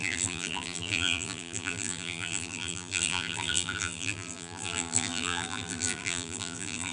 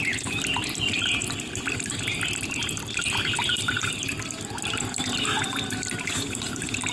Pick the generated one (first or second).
first